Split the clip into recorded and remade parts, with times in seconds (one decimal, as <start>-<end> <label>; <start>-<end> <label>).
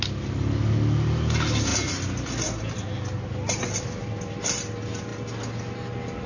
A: 0.0-6.3 recorded